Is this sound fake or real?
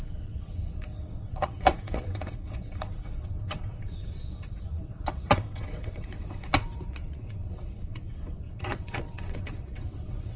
fake